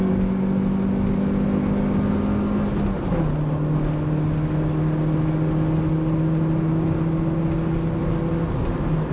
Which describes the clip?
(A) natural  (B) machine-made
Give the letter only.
A